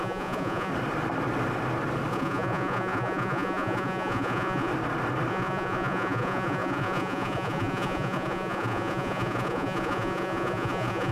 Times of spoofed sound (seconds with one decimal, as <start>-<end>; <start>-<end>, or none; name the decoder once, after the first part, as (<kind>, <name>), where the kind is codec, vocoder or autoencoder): 0.0-0.7 (vocoder, Vocos); 2.1-4.7; 5.3-11.1